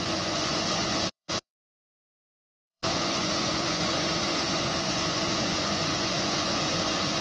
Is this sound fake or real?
fake